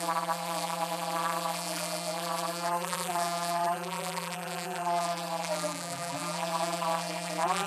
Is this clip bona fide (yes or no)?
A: no